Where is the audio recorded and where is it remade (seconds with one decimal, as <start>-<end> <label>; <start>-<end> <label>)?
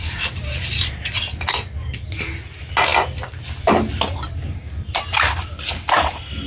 0.0-6.5 recorded